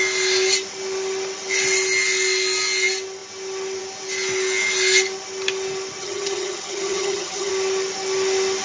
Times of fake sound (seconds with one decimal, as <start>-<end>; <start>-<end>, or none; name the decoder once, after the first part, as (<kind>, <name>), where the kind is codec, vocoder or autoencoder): 6.0-7.5 (vocoder, HiFi-GAN)